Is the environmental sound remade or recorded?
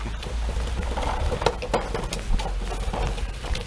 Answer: recorded